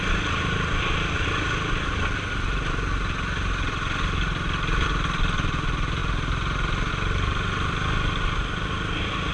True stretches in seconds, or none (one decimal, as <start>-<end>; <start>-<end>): 0.0-9.3